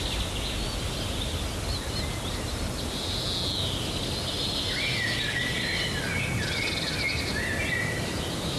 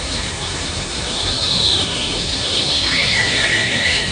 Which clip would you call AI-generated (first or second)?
second